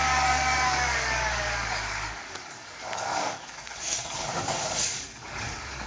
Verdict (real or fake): fake